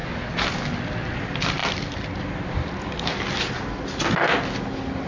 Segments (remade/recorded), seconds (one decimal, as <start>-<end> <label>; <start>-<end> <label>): 0.0-5.1 recorded